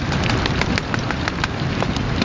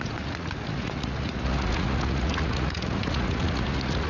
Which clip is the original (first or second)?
first